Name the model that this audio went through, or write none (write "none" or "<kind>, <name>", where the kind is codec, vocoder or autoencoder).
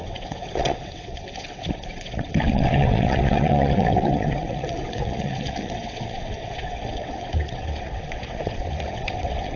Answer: vocoder, WaveNeXt